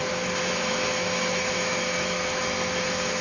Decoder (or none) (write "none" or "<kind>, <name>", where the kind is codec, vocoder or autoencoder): autoencoder, DAC-VAE